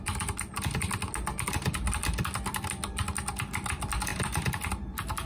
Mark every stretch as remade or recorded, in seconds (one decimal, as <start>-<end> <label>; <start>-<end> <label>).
0.0-5.3 recorded